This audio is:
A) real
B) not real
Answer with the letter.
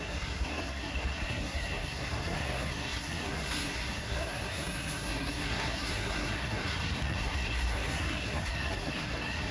B